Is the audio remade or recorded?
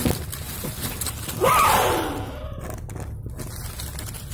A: recorded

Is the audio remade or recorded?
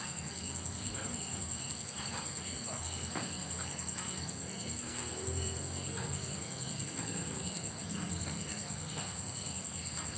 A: remade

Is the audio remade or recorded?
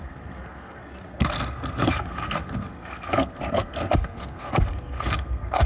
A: remade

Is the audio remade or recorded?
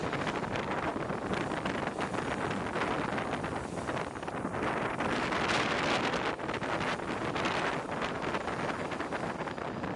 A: recorded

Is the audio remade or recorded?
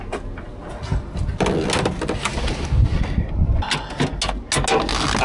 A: recorded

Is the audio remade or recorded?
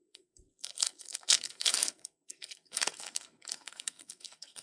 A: remade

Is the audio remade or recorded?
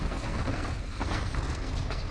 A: remade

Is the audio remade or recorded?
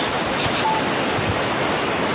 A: recorded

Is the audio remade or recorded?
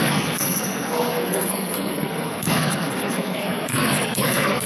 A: remade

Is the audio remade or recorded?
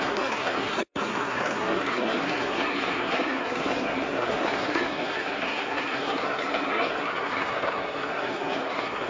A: remade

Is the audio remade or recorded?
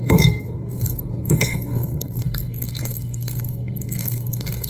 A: remade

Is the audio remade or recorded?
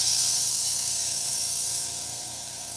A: remade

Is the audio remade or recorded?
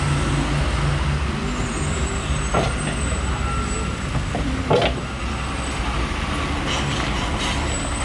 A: recorded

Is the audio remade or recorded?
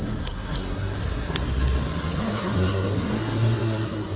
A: remade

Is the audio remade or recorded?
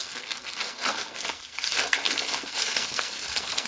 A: remade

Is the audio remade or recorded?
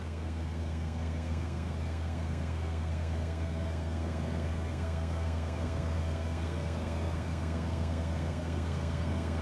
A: remade